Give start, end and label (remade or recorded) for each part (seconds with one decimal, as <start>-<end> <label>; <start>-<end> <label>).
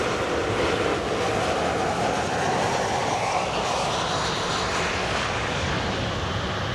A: 0.0-0.9 recorded; 0.9-1.4 remade; 1.4-3.0 recorded; 3.0-3.9 remade; 3.9-5.0 recorded; 5.0-5.7 remade; 5.7-6.7 recorded